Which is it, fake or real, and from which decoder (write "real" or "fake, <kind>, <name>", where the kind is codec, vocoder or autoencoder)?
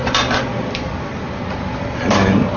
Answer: fake, vocoder, BigVGAN v2